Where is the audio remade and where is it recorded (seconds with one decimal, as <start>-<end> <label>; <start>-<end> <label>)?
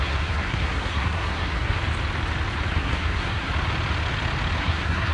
0.0-1.8 remade; 1.8-2.7 recorded; 2.7-3.5 remade; 3.5-4.6 recorded; 4.6-5.1 remade